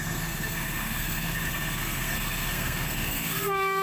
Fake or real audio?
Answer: fake